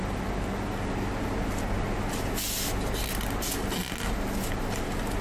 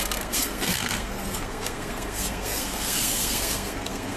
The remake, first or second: second